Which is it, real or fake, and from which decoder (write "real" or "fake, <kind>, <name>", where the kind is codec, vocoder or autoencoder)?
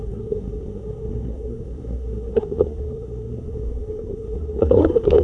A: fake, codec, SNAC